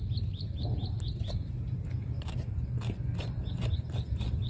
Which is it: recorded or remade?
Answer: recorded